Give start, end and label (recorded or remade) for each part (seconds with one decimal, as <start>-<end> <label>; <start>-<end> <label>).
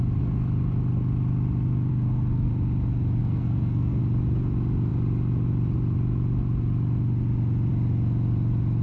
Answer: 0.0-1.9 recorded; 1.9-2.5 remade; 2.5-3.2 recorded; 3.2-4.0 remade; 4.0-8.8 recorded